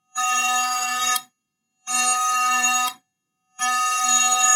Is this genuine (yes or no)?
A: no